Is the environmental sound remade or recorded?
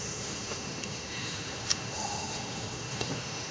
remade